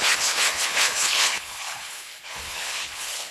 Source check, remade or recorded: remade